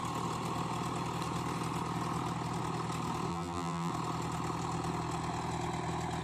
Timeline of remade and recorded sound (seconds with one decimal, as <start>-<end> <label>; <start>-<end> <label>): 0.0-3.3 recorded; 3.3-3.9 remade; 3.9-6.2 recorded